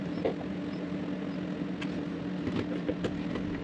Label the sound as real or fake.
real